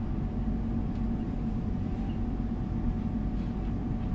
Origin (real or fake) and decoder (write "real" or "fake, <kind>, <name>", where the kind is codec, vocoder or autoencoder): real